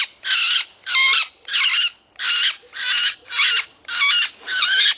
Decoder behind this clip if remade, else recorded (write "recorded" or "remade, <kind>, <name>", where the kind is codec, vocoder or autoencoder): recorded